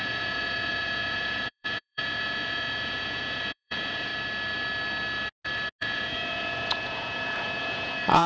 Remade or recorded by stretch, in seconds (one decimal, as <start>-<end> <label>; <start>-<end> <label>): 0.0-4.1 remade; 4.1-5.8 recorded; 5.8-8.3 remade